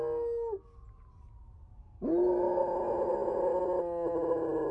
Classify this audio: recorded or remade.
recorded